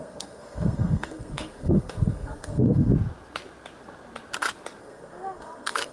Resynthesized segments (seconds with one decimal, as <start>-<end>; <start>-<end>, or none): 0.0-2.9; 4.8-5.9